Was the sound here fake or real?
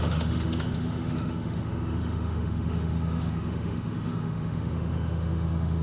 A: fake